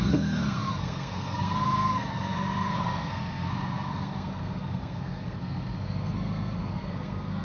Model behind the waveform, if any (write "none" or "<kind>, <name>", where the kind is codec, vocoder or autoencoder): codec, SNAC